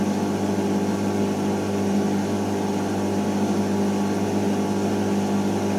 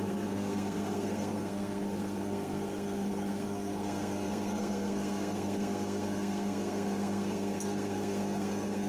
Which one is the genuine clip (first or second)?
first